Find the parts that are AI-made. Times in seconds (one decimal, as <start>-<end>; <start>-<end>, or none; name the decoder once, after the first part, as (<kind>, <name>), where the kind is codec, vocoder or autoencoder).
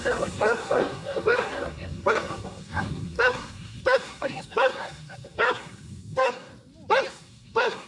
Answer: 0.0-6.5 (codec, SNAC); 7.1-7.9